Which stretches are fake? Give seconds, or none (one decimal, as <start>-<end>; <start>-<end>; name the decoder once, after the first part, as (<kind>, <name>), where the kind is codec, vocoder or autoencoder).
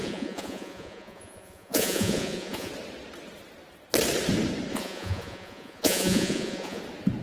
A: 0.0-2.7 (vocoder, Vocos); 4.7-6.8